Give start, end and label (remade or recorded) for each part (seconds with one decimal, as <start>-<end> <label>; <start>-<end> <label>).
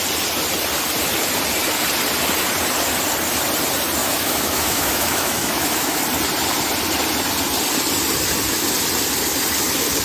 0.0-4.0 recorded; 4.0-6.0 remade; 6.0-10.0 recorded